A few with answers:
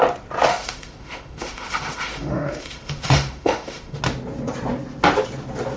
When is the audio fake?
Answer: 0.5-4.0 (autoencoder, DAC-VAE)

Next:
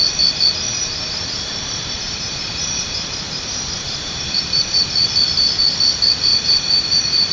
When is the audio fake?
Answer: 0.7-5.1 (vocoder, BigVGAN v2); 6.3-7.3

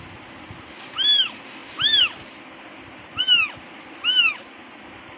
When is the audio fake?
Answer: none

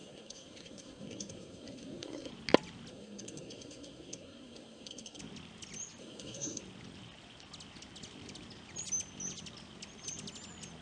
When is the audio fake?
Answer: 0.0-2.3 (codec, SNAC); 2.9-5.2; 6.0-6.6